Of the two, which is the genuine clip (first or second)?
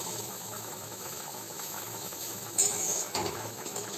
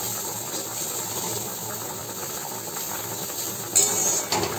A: second